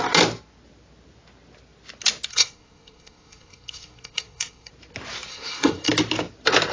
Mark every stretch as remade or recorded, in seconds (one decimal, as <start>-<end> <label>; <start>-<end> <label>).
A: 0.0-2.3 recorded; 2.3-4.7 remade; 4.7-5.3 recorded; 5.3-5.9 remade; 5.9-6.7 recorded